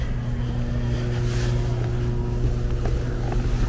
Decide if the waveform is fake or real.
real